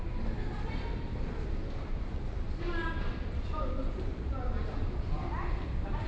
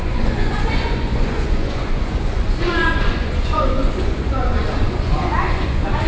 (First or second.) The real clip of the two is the first